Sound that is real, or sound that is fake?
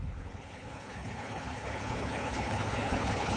fake